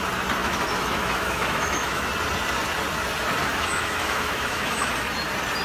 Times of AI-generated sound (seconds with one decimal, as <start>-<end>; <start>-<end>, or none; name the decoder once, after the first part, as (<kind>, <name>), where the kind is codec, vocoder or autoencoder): 0.4-2.1 (autoencoder, DAC-VAE); 3.5-4.9